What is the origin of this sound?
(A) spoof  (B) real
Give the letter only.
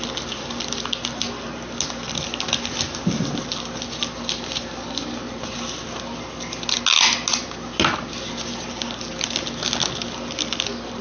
B